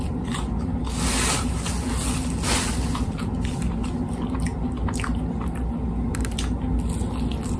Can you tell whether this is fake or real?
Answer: real